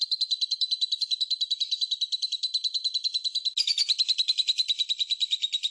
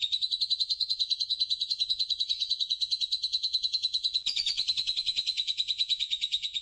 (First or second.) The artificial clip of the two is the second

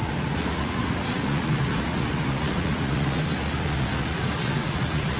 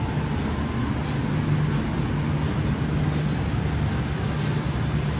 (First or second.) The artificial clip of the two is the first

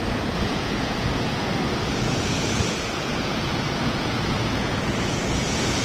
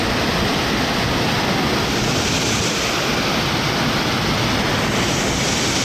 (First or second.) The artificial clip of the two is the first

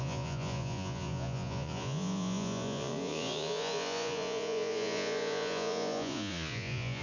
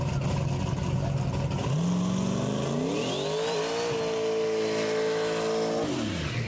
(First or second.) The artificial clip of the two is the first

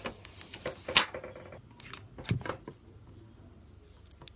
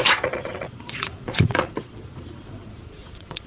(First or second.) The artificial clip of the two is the second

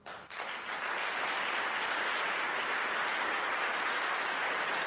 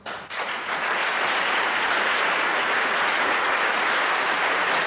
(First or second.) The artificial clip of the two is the second